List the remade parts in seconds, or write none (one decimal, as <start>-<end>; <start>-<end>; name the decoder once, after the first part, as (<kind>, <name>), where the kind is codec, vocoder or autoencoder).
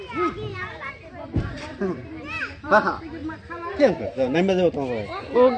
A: 0.5-2.7 (vocoder, BigVGAN v2); 3.2-4.7